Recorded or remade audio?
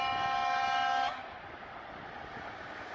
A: recorded